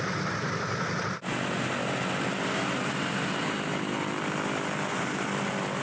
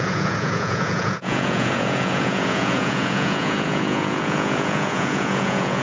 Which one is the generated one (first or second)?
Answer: second